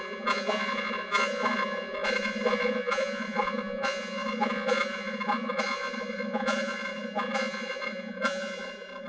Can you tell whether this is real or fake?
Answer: fake